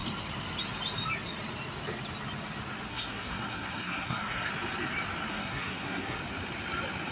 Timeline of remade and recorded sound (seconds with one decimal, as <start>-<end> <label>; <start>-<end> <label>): 0.0-2.9 recorded; 2.9-4.5 remade; 4.5-5.3 recorded; 5.3-6.2 remade; 6.2-7.1 recorded